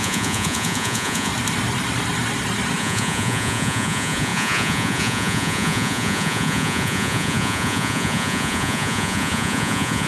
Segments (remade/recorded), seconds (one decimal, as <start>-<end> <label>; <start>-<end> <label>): 0.0-1.3 remade; 1.3-2.8 recorded; 2.8-10.1 remade